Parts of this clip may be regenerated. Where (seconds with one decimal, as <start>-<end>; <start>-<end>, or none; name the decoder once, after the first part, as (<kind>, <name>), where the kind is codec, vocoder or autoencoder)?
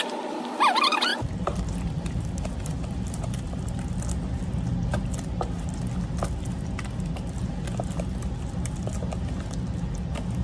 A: 1.1-3.7 (vocoder, BigVGAN v2)